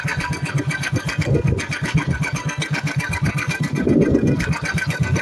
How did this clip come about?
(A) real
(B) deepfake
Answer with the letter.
B